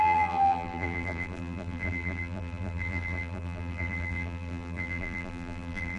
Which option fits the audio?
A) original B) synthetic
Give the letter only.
B